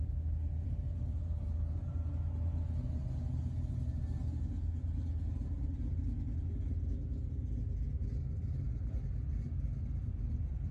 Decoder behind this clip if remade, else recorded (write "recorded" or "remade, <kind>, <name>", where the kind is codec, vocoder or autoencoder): recorded